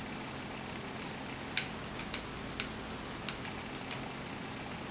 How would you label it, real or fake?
real